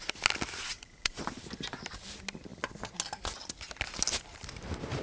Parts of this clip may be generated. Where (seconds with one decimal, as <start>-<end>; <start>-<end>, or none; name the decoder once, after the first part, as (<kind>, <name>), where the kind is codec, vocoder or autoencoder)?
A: 0.6-1.2 (vocoder, Vocos)